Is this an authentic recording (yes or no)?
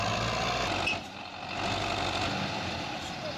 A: yes